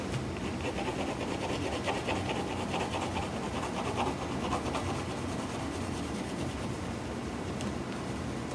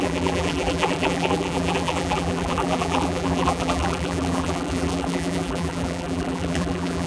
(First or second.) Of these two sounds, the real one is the first